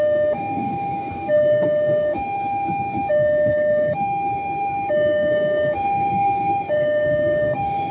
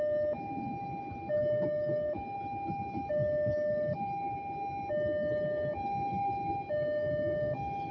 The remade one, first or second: first